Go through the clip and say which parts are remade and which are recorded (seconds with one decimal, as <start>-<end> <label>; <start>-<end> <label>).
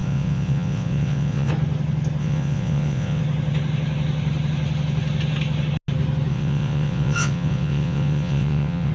0.0-1.5 remade; 1.5-2.2 recorded; 2.2-3.2 remade; 3.2-6.3 recorded; 6.3-8.9 remade